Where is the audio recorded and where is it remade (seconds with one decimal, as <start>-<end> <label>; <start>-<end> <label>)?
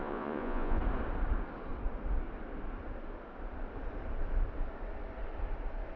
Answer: 0.0-0.8 remade; 0.8-6.0 recorded